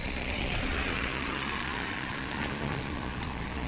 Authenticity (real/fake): fake